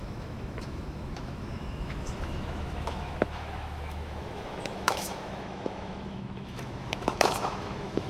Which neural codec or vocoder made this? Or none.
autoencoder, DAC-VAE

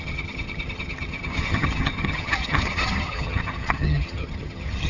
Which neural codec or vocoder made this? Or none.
vocoder, HiFi-GAN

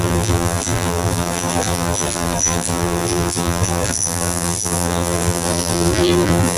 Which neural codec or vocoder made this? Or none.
vocoder, BigVGAN v2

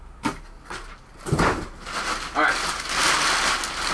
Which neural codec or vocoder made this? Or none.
none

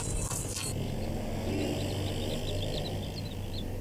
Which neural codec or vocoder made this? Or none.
none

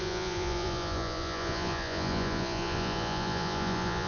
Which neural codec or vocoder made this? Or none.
vocoder, Vocos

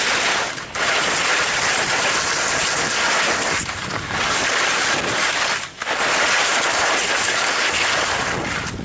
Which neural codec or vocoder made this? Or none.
none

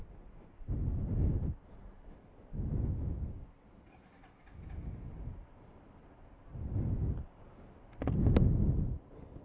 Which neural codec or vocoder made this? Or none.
none